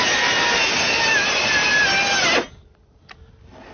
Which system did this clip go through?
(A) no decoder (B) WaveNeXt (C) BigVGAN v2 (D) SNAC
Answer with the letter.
A